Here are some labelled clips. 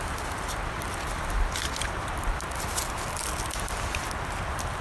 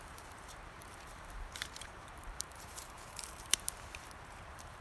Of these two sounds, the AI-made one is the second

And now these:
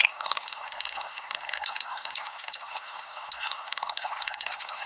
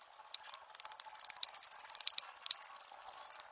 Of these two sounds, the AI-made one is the first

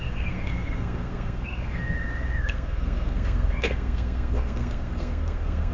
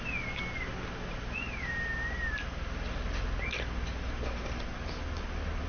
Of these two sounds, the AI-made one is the first